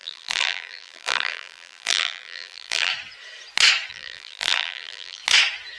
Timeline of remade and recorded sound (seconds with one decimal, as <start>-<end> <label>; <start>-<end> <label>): 0.0-2.9 remade; 2.9-3.9 recorded; 3.9-5.2 remade; 5.2-5.8 recorded